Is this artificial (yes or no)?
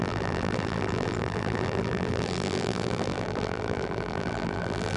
yes